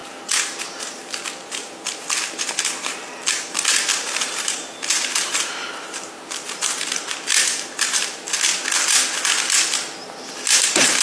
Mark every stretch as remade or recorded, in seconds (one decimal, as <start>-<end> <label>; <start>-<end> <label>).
0.0-8.5 remade; 8.5-10.3 recorded; 10.3-11.0 remade